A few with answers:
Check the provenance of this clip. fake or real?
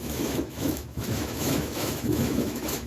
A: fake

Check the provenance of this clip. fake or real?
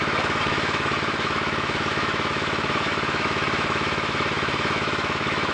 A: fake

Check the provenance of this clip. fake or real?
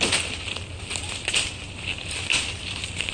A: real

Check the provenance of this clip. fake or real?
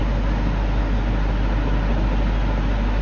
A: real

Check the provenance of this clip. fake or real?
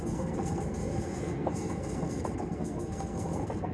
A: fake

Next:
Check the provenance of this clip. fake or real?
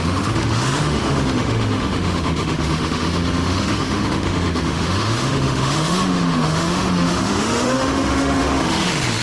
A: fake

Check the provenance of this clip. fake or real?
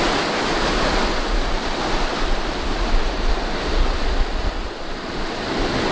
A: real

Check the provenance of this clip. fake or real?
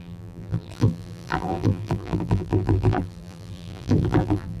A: fake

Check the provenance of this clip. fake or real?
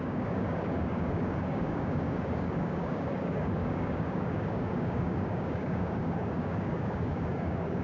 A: fake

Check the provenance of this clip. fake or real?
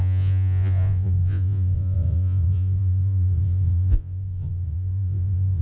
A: fake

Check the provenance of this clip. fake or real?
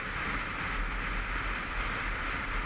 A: real